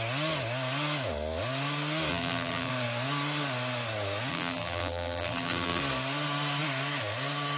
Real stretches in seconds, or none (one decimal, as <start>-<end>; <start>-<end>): 0.0-2.1; 2.7-4.3; 5.8-7.6